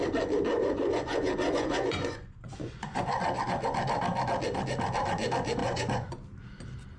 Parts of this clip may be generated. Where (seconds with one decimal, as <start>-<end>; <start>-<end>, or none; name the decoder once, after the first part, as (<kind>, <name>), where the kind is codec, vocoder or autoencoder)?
0.6-3.0 (vocoder, Vocos); 5.6-6.1